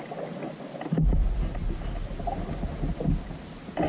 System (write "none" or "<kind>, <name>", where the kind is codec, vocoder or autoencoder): none